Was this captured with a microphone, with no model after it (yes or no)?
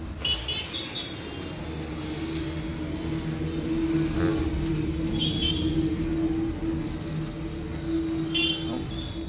yes